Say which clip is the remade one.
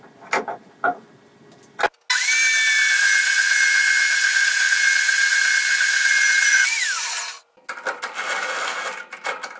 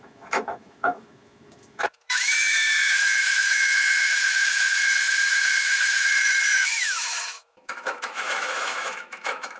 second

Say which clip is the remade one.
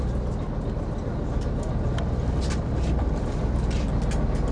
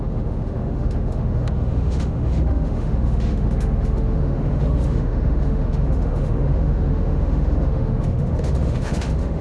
second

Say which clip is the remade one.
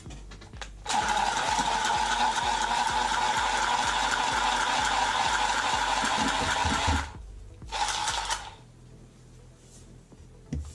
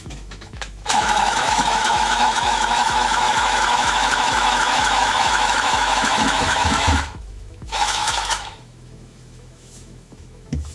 second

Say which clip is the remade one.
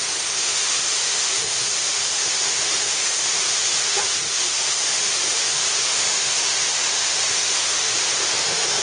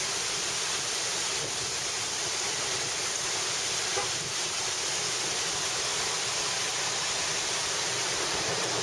first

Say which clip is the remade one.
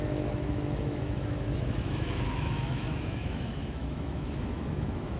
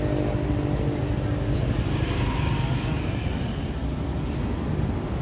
first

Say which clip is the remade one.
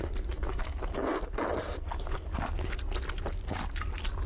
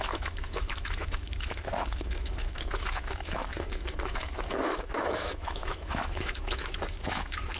second